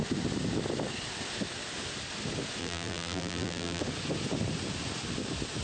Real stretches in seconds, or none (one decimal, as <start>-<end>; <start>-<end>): 0.0-2.6; 3.8-5.6